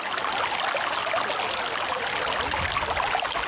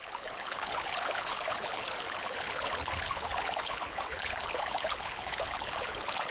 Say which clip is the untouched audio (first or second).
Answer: first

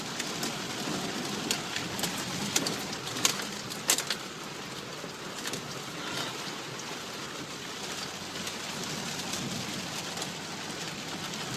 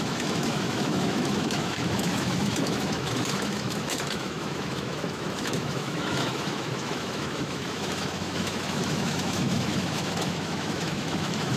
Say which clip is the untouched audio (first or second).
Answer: first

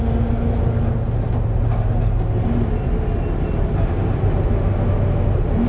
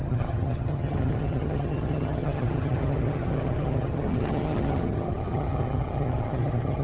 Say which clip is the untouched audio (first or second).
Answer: first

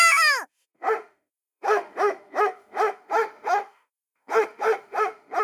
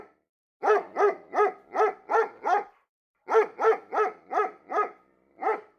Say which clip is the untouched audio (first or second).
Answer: second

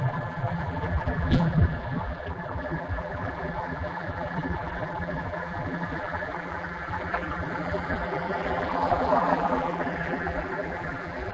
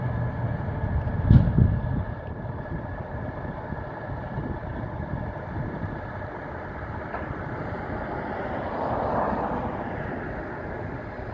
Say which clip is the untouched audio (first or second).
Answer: second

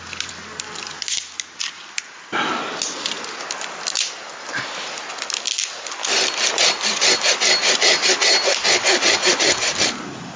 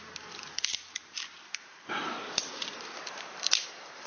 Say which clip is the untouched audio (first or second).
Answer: first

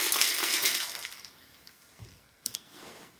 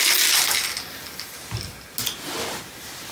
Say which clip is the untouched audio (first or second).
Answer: second